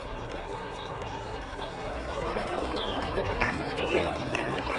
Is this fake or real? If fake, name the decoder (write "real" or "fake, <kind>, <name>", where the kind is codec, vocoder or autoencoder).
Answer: fake, codec, SNAC